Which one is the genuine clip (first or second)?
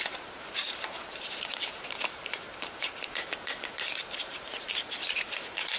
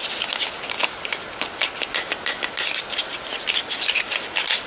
second